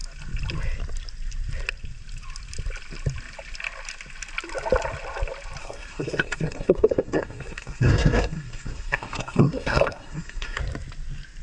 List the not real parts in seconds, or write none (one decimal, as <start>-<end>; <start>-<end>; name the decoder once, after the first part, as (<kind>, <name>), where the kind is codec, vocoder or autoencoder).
5.6-10.6 (codec, SNAC)